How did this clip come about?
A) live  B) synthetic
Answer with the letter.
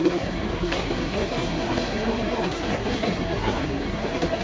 B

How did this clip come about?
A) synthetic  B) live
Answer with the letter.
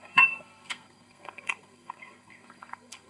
A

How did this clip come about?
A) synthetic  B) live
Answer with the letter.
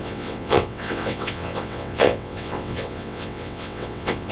A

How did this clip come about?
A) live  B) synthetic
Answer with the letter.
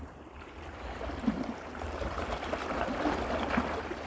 A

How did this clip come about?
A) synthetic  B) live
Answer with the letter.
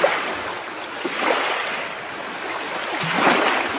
B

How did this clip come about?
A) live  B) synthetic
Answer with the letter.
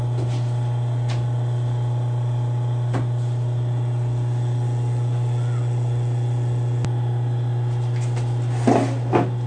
A